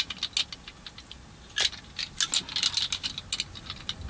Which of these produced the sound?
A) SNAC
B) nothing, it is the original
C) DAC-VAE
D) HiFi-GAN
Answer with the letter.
B